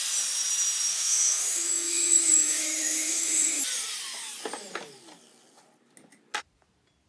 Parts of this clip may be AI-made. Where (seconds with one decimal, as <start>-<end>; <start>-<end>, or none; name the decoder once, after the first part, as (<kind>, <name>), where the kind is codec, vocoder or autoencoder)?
0.9-3.6 (autoencoder, DAC-VAE)

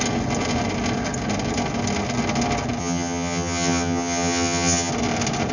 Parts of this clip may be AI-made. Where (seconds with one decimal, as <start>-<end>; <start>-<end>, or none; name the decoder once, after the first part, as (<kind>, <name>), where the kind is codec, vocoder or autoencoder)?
2.8-4.9 (vocoder, HiFi-GAN)

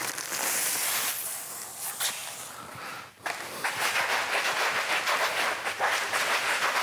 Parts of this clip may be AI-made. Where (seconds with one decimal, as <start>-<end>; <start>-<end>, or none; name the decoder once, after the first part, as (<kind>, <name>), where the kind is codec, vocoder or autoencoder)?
none

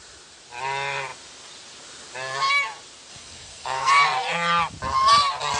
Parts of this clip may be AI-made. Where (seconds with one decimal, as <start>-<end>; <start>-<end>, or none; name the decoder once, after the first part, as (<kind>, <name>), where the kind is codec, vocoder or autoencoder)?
3.1-3.9 (codec, SNAC)

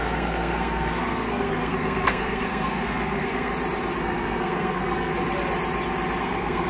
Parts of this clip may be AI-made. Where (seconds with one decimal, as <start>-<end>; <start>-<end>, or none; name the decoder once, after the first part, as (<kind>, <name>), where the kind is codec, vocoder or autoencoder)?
0.0-3.5 (codec, SNAC); 4.0-5.1; 6.2-6.7

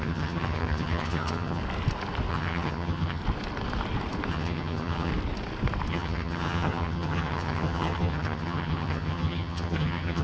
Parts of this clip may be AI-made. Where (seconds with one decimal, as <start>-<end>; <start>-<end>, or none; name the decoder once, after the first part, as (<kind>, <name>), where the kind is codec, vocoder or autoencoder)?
0.0-1.6 (vocoder, HiFi-GAN); 2.3-3.2; 4.3-5.1; 5.9-10.2

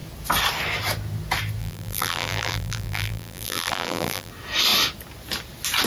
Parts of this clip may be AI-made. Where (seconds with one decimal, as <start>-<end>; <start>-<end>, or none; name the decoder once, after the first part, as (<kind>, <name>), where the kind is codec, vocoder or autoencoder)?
1.6-4.3 (vocoder, BigVGAN v2)

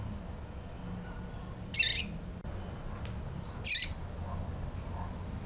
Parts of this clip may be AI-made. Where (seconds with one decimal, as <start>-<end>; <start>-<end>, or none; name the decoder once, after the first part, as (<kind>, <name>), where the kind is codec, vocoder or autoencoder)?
none